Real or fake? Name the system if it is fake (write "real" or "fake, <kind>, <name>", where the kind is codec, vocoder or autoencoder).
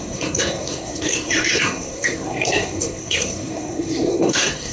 fake, codec, SNAC